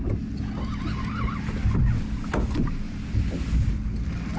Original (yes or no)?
yes